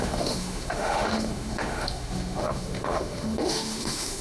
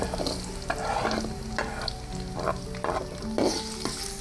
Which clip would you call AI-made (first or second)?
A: first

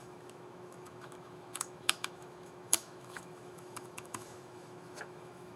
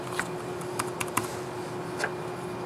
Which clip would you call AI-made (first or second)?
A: first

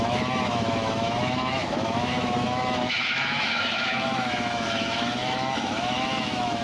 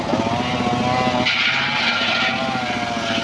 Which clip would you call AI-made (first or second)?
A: first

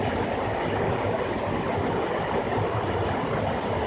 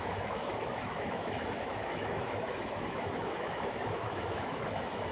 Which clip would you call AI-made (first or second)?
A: second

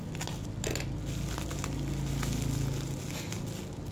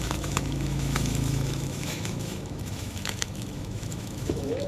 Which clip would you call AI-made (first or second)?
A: second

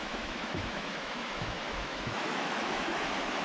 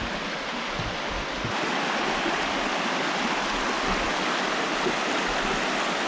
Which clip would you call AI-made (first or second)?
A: first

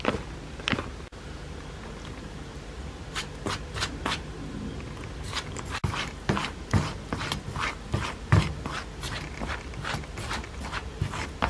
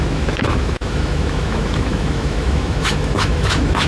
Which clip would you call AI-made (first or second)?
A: second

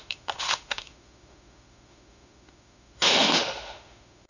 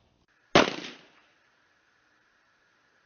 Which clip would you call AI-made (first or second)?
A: first